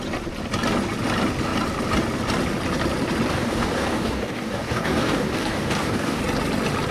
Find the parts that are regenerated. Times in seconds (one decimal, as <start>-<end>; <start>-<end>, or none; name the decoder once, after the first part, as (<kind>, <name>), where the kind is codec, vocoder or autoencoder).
3.3-6.2 (codec, DAC)